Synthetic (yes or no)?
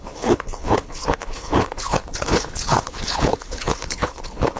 yes